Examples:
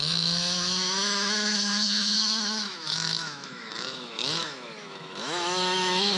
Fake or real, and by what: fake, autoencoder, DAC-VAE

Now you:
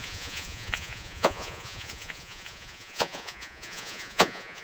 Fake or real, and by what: fake, vocoder, Vocos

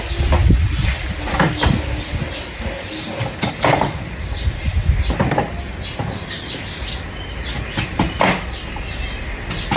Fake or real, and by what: real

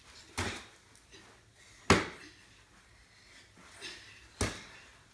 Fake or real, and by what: real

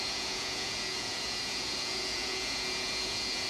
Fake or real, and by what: fake, vocoder, Vocos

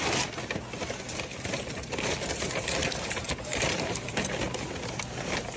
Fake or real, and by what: real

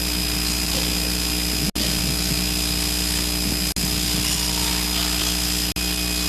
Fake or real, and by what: real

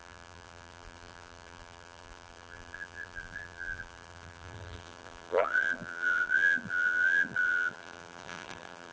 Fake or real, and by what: fake, vocoder, BigVGAN v2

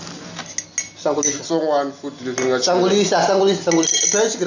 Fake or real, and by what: real